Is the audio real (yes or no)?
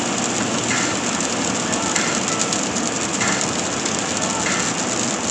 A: yes